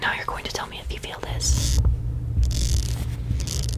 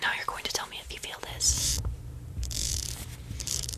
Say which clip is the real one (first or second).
first